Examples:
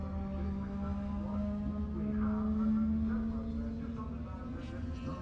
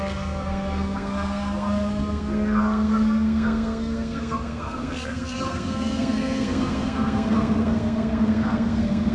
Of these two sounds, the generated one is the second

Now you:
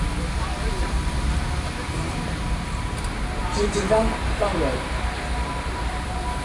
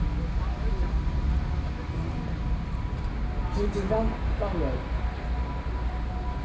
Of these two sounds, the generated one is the first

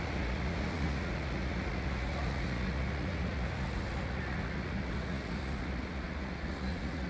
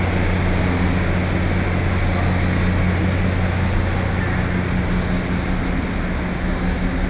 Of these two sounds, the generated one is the first